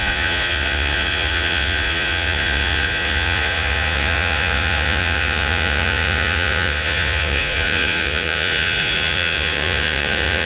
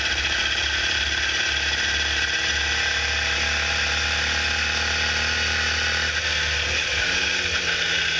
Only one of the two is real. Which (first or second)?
second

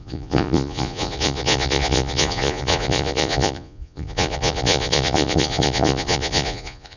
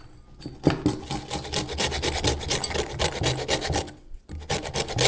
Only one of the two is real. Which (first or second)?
second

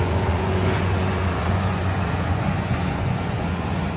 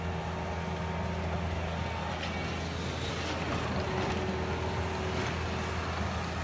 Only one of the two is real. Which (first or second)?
second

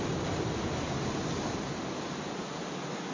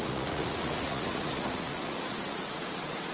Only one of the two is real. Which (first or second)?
first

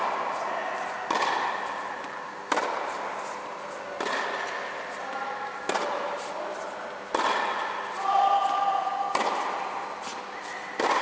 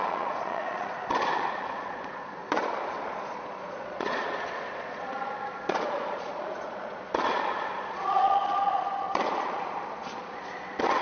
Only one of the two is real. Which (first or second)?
first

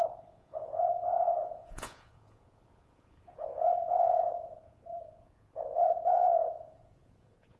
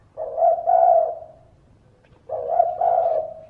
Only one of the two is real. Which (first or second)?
second